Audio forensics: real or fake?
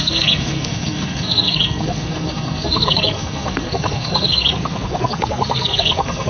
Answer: fake